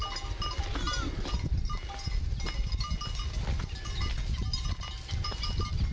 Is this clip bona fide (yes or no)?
yes